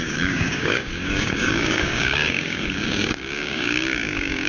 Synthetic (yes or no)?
yes